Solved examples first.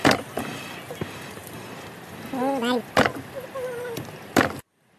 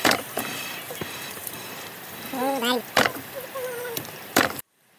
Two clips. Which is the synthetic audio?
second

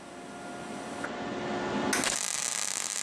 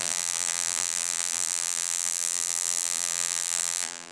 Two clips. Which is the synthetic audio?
second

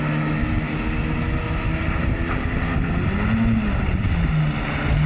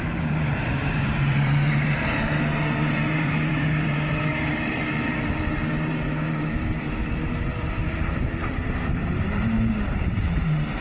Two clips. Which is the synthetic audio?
second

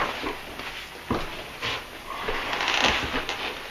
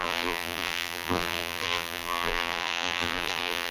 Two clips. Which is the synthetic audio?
second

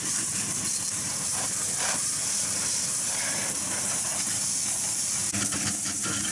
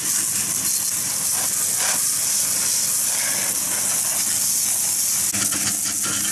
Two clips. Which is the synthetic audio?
first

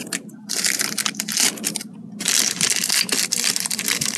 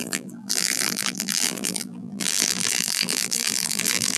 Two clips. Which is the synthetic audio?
second